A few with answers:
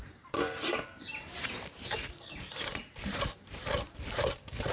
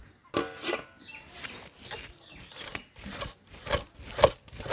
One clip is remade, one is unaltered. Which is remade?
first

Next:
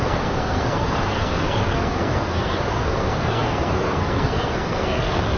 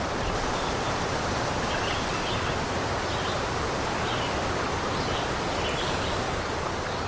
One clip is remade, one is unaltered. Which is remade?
first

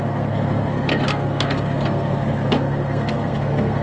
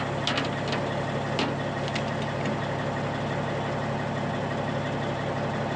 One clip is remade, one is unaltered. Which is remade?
first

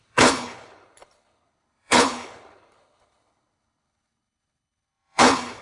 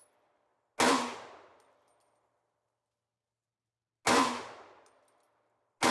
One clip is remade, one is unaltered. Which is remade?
first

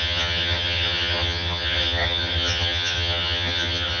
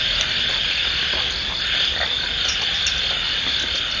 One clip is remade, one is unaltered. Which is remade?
first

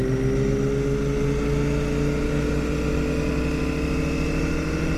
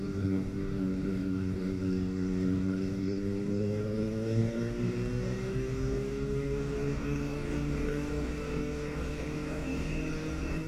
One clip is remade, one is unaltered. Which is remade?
second